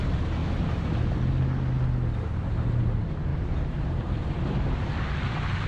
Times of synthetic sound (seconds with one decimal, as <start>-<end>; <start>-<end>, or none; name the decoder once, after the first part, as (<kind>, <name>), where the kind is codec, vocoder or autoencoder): 3.3-4.6 (vocoder, BigVGAN v2)